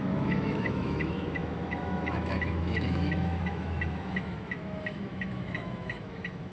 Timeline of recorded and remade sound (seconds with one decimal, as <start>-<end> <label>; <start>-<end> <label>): 0.0-6.5 remade